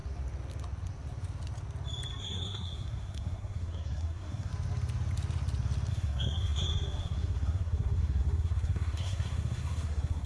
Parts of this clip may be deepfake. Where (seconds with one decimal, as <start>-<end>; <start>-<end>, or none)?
2.2-4.5; 5.9-10.3